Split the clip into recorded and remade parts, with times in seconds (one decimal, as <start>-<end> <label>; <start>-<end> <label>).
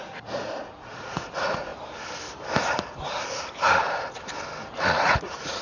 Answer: 0.0-1.7 remade; 1.7-4.9 recorded; 4.9-5.6 remade